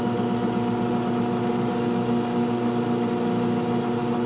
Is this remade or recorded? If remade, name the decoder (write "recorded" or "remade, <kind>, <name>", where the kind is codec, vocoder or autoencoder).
recorded